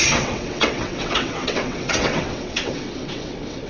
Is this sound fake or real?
fake